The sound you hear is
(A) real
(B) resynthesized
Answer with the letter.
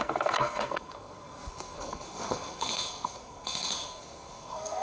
B